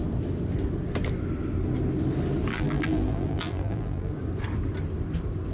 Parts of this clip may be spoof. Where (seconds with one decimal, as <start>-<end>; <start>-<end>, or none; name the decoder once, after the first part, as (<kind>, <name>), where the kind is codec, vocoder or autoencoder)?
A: 2.5-4.1 (vocoder, BigVGAN v2)